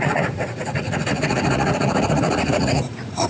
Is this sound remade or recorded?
remade